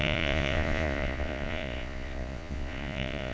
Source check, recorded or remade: remade